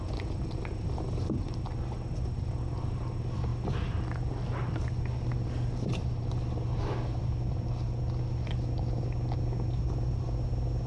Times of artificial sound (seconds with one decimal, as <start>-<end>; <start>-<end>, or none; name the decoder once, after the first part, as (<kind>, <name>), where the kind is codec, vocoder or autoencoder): none